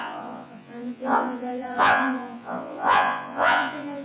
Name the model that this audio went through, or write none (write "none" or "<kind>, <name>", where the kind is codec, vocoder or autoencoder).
vocoder, Vocos